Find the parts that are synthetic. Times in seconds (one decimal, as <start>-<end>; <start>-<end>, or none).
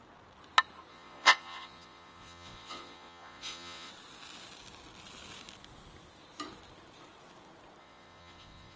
0.9-3.9; 7.8-8.8